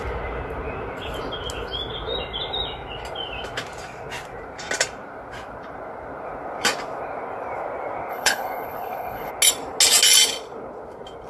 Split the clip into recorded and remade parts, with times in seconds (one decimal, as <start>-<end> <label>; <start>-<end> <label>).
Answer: 0.0-8.1 recorded; 8.1-9.3 remade; 9.3-11.3 recorded